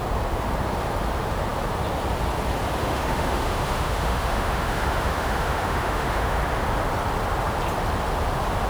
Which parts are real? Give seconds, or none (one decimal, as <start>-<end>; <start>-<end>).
0.0-2.8; 6.4-8.7